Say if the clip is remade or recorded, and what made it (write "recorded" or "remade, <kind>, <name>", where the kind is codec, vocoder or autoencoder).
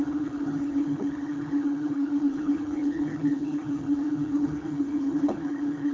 remade, codec, HILCodec